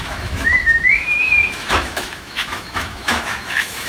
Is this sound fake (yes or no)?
yes